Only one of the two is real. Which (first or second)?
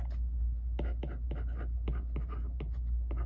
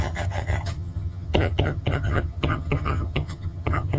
first